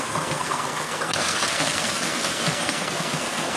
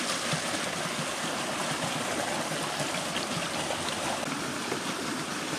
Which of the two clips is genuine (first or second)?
second